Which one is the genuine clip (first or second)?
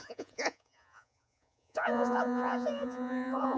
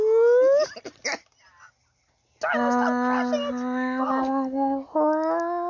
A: second